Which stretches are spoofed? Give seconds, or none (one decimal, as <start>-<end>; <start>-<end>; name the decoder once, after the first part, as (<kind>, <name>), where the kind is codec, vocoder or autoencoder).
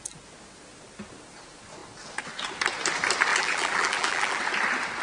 3.3-4.4 (vocoder, BigVGAN v2)